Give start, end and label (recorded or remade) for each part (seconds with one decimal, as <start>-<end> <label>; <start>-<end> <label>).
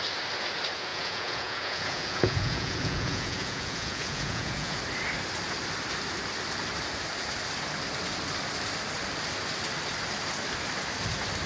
0.0-0.9 recorded; 0.9-4.8 remade; 4.8-11.5 recorded